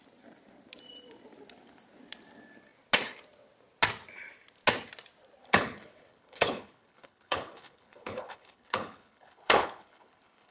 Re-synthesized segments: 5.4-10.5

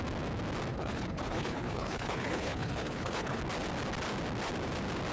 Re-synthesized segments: 0.7-3.4